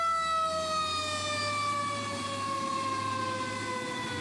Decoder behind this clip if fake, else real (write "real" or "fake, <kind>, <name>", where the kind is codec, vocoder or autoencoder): real